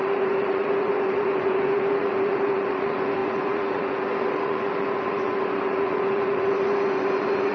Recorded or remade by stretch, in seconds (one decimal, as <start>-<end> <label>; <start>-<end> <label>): 0.0-7.5 remade